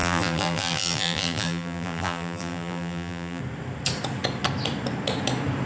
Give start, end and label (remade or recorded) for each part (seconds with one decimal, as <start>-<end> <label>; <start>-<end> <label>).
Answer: 0.0-3.4 remade; 3.4-5.7 recorded

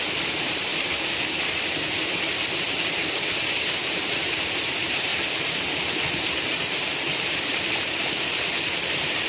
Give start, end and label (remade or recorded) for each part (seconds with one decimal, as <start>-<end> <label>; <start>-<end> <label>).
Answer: 0.0-0.7 remade; 0.7-3.5 recorded; 3.5-5.1 remade; 5.1-5.6 recorded; 5.6-9.3 remade

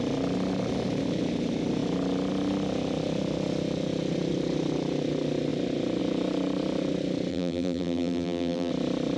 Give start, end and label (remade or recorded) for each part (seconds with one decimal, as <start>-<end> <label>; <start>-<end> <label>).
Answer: 0.0-7.3 recorded; 7.3-8.7 remade; 8.7-9.2 recorded

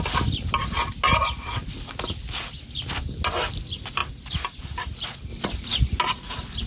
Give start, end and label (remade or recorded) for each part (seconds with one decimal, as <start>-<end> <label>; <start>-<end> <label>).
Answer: 0.0-6.7 recorded